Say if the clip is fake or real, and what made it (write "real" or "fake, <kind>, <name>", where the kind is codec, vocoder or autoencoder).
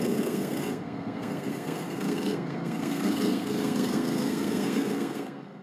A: fake, codec, SNAC